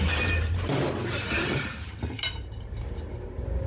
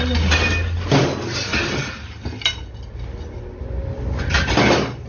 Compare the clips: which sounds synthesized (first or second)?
first